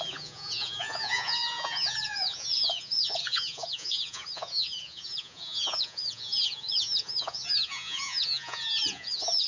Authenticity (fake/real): fake